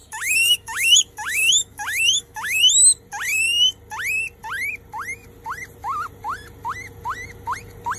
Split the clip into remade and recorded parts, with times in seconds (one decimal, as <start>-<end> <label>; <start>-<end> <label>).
0.0-2.6 remade; 2.6-8.0 recorded

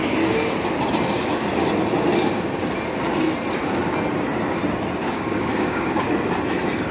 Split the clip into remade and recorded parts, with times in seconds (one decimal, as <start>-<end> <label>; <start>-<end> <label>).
0.0-5.0 recorded; 5.0-6.1 remade; 6.1-6.9 recorded

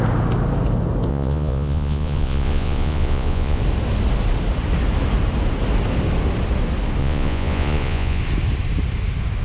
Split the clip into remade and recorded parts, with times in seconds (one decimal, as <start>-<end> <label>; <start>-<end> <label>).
0.0-1.1 recorded; 1.1-3.6 remade; 3.6-7.0 recorded; 7.0-8.2 remade; 8.2-9.4 recorded